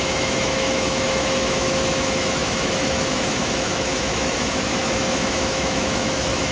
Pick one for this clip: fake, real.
fake